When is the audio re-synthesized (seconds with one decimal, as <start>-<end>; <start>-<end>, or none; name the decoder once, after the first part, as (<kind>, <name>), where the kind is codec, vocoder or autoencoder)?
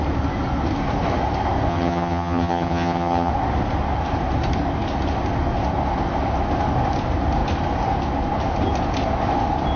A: 1.7-3.3 (vocoder, HiFi-GAN)